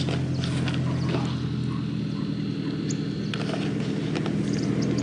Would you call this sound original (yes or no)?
yes